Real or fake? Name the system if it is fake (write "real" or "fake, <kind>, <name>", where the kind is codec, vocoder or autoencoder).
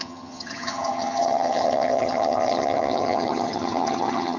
fake, vocoder, HiFi-GAN